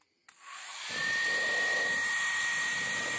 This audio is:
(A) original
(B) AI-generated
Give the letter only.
A